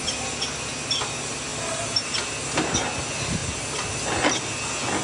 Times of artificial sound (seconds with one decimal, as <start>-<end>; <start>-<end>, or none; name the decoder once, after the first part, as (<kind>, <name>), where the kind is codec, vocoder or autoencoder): none